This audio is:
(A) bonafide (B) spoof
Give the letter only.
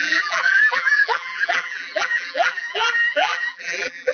B